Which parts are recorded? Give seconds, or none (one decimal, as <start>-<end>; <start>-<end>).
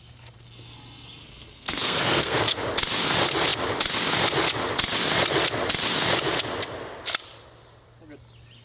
0.0-1.2; 2.6-8.6